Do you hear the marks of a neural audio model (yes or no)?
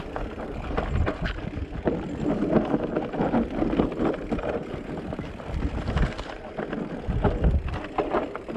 no